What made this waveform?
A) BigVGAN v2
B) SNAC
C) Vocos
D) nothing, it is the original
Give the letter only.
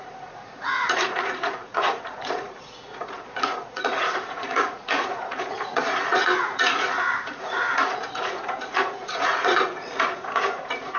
C